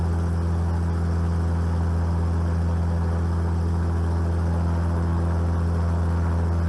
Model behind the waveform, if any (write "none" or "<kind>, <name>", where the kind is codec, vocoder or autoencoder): none